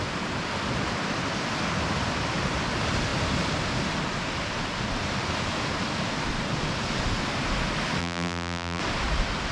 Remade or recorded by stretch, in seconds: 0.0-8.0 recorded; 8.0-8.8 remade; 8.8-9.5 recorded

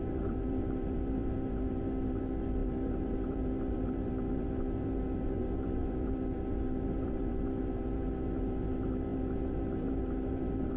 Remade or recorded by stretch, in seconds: 0.0-10.8 remade

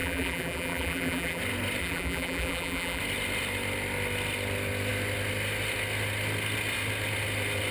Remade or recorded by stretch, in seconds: 0.0-1.4 remade; 1.4-1.8 recorded; 1.8-3.0 remade; 3.0-7.7 recorded

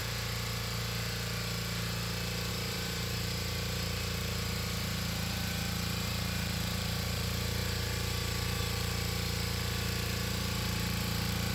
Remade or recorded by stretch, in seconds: 0.0-2.5 recorded; 2.5-11.5 remade

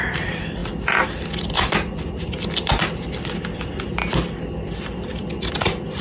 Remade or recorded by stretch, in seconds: 0.0-6.0 recorded